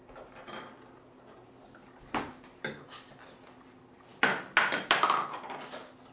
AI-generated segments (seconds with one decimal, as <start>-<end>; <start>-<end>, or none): none